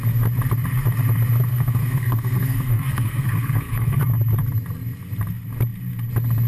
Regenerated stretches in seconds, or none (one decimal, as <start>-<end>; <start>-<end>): 1.5-4.0